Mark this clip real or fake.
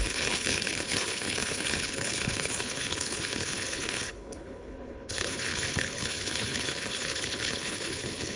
fake